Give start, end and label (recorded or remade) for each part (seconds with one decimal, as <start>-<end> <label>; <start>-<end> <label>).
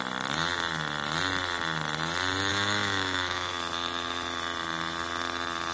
0.0-2.5 recorded; 2.5-3.5 remade; 3.5-5.7 recorded